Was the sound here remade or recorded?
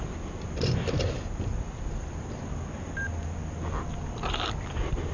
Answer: recorded